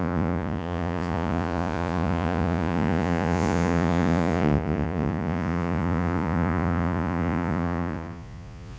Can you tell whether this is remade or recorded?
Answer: remade